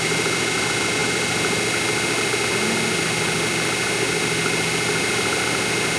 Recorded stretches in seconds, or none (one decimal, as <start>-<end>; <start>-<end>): 0.0-6.0